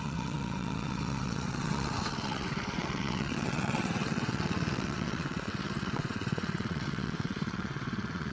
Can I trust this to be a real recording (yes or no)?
no